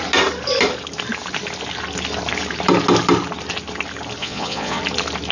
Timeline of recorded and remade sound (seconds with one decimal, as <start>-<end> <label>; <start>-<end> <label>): 0.0-4.2 recorded; 4.2-4.8 remade; 4.8-5.3 recorded